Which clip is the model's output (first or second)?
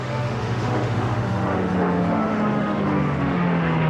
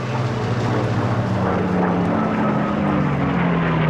first